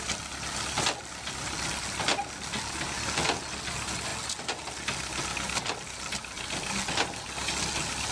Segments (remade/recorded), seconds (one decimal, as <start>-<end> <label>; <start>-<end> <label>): 0.0-8.1 recorded